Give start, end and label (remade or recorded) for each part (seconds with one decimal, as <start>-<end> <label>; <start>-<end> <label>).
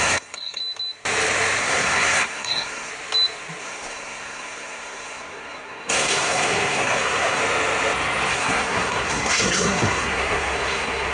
0.0-0.6 remade; 0.6-1.6 recorded; 1.6-2.9 remade; 2.9-3.6 recorded; 3.6-7.4 remade; 7.4-8.3 recorded; 8.3-11.1 remade